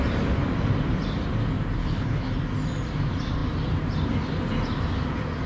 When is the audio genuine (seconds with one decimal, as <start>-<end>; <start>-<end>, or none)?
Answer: 0.0-1.8; 2.3-5.5